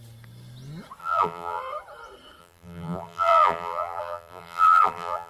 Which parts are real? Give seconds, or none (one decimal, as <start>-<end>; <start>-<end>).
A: 0.0-1.0; 1.6-2.4